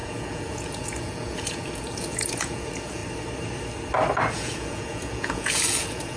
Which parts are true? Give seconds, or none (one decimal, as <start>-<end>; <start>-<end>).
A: 3.0-4.3